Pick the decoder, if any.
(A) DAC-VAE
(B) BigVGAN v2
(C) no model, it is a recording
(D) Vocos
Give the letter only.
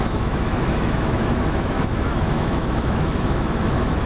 A